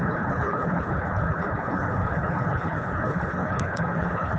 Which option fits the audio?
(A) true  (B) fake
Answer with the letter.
B